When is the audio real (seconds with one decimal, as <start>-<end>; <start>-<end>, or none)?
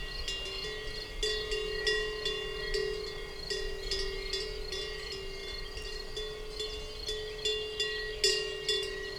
0.0-9.2